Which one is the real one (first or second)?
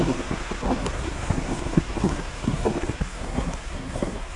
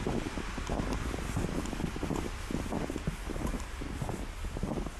second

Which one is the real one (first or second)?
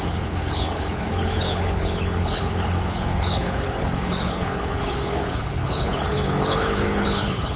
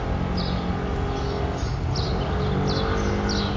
second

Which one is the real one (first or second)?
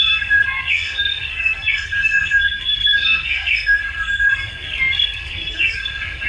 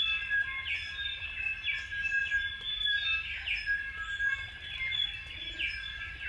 second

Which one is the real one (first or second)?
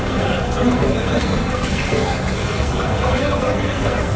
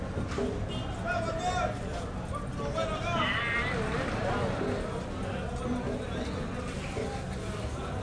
second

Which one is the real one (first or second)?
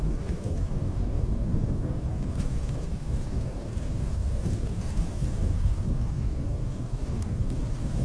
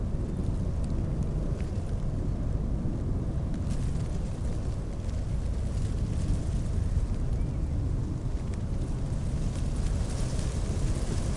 second